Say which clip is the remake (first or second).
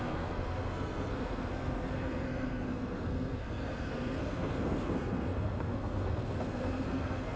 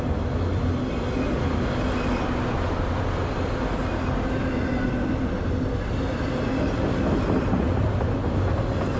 first